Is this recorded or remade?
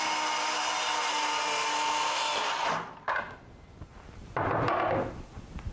recorded